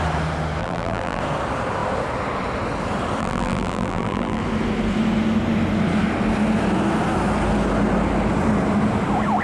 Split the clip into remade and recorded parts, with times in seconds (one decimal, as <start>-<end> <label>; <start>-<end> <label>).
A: 0.0-0.6 recorded; 0.6-1.2 remade; 1.2-3.2 recorded; 3.2-4.4 remade; 4.4-9.4 recorded